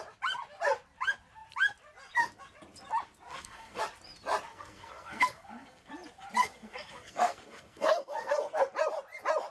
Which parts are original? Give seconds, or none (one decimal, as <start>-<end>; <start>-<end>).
0.0-3.3; 3.8-4.5; 5.9-6.4; 8.7-9.5